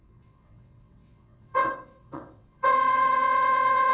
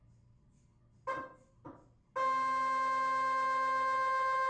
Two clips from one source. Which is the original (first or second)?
second